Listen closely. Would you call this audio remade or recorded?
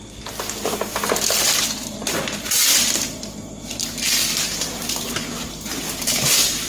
recorded